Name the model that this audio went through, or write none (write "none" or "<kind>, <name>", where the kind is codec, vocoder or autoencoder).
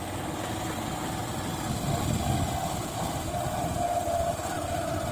none